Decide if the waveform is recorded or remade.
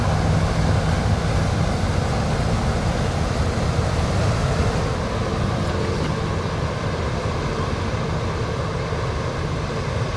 recorded